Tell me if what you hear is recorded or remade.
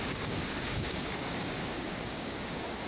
remade